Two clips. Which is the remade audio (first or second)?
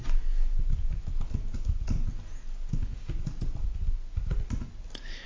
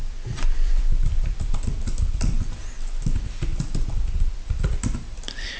second